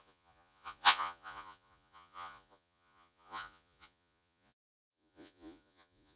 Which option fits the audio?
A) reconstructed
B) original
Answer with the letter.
A